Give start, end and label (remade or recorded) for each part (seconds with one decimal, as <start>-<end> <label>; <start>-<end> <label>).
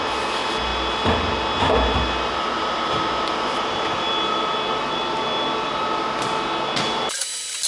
0.0-7.7 recorded